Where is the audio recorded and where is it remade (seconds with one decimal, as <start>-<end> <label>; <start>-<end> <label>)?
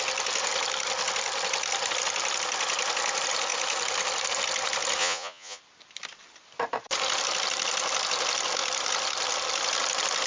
0.0-5.0 recorded; 5.0-5.6 remade; 5.6-10.3 recorded